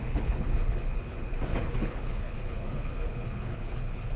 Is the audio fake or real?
fake